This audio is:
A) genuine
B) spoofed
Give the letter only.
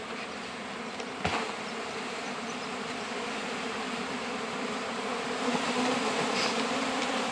B